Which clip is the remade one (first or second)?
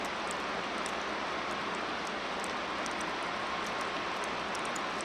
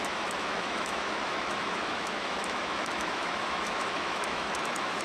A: second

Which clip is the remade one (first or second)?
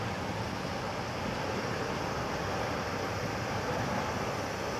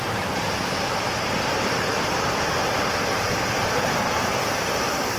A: second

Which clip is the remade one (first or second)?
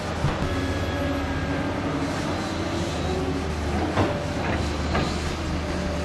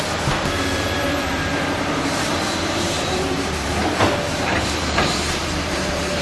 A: second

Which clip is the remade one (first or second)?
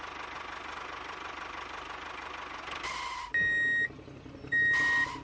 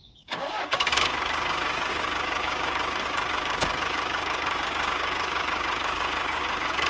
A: second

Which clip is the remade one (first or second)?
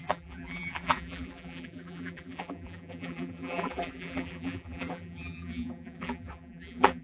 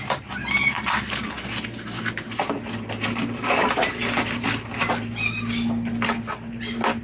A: first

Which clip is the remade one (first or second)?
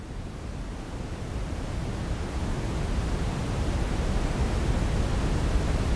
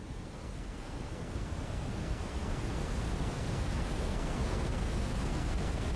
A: second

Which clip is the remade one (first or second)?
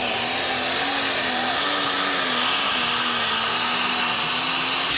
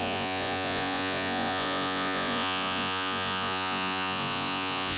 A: second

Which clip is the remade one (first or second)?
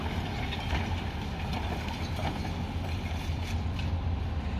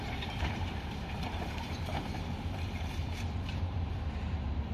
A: second